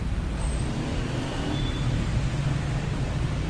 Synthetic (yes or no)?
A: yes